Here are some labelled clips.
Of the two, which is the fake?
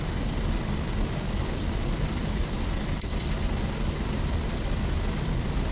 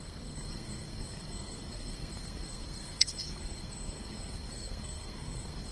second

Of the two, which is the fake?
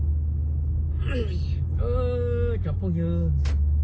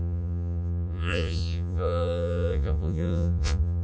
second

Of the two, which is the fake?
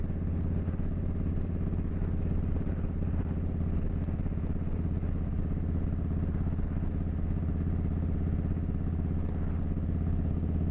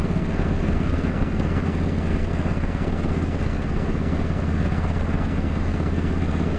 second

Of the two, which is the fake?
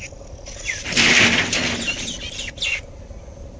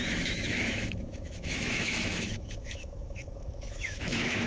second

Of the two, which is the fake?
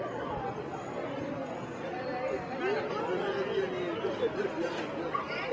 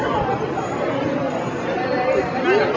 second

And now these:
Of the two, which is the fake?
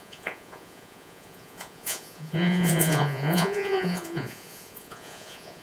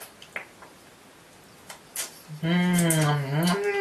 first